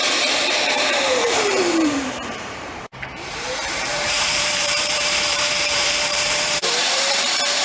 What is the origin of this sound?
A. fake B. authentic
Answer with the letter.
A